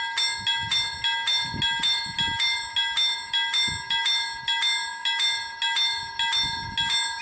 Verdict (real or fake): real